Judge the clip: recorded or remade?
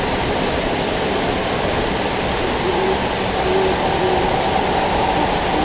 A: recorded